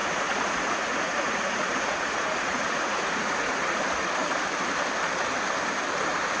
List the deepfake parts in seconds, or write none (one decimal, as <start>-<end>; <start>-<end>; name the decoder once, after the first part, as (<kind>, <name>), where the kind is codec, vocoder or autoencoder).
0.0-3.8 (vocoder, Vocos)